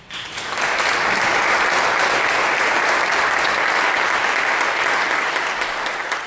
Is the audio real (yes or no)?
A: yes